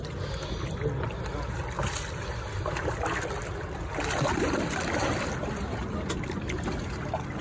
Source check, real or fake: real